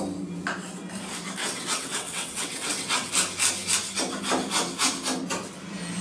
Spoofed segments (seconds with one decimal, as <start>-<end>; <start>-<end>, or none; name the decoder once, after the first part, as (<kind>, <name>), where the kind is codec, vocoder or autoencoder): 1.4-3.1 (vocoder, WaveNeXt)